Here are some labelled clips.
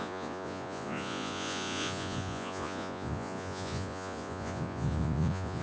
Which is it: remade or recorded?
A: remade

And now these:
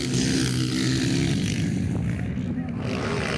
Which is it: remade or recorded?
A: recorded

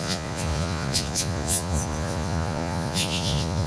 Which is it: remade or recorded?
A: remade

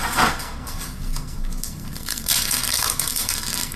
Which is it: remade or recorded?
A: remade